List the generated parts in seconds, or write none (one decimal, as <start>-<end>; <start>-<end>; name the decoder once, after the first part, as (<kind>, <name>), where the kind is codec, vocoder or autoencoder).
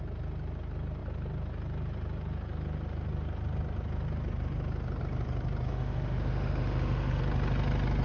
5.7-7.2 (autoencoder, DAC-VAE)